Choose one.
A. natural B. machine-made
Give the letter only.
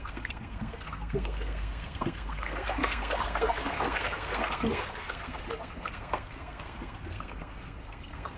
B